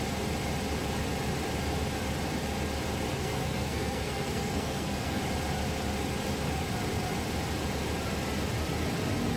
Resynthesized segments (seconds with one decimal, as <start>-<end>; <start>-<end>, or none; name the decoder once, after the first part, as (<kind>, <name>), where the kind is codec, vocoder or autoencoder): 3.1-5.2 (codec, SNAC)